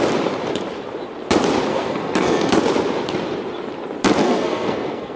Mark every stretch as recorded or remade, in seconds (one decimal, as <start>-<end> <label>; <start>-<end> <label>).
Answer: 0.0-1.7 recorded; 1.7-2.5 remade; 2.5-4.2 recorded; 4.2-5.2 remade